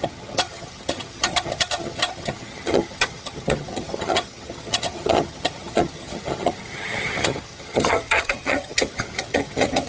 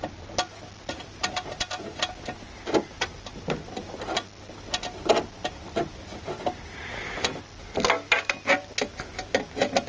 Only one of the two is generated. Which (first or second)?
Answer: first